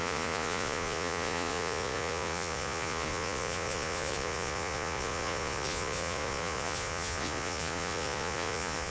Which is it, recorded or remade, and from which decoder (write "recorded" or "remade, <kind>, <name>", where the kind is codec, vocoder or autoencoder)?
remade, vocoder, Vocos